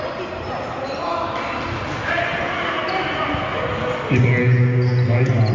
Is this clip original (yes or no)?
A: yes